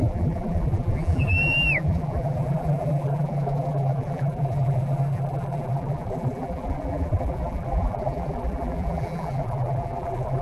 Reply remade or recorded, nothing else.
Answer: remade